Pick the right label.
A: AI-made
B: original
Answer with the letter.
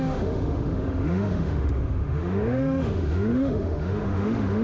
A